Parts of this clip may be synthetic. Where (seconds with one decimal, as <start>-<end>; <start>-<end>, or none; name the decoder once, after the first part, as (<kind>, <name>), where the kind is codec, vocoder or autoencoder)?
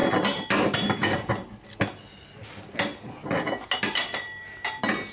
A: none